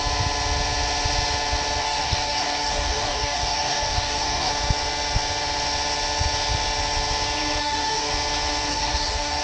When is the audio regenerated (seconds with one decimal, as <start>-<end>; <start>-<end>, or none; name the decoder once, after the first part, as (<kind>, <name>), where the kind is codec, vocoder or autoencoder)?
1.8-4.5 (codec, DAC); 7.6-8.1; 8.7-9.4